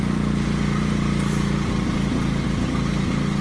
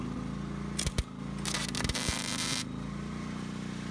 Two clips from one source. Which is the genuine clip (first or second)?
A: second